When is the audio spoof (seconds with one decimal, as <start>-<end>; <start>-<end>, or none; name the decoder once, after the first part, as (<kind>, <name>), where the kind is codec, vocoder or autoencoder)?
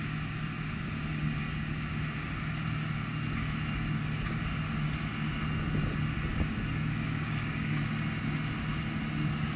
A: 6.3-7.8 (codec, DAC)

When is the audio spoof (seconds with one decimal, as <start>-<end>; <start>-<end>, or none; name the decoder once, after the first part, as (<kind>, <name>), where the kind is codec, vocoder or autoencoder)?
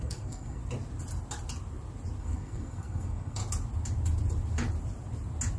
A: 0.0-0.6 (codec, SNAC); 2.2-3.4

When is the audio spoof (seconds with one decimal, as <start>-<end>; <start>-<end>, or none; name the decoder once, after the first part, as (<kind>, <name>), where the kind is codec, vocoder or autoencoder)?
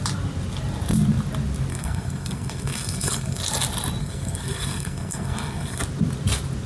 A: 1.7-3.4 (codec, SNAC); 4.0-5.8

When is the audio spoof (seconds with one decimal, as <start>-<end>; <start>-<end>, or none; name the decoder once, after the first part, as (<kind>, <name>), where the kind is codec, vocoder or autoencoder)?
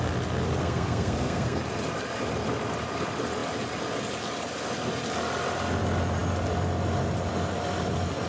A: 0.6-1.6 (codec, SNAC)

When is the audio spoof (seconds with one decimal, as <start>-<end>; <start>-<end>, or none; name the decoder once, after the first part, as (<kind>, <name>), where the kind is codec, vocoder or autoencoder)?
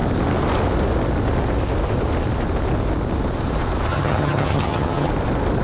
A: 3.9-5.1 (vocoder, HiFi-GAN)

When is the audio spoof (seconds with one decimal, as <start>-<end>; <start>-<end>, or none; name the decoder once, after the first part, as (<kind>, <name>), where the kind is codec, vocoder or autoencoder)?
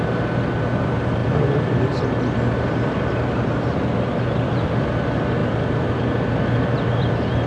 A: 1.2-2.0 (vocoder, BigVGAN v2); 5.4-7.1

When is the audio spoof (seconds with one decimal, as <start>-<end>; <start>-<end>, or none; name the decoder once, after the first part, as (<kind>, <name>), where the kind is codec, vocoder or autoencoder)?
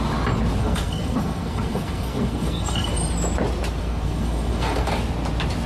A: 0.6-2.9 (codec, SNAC); 3.8-4.9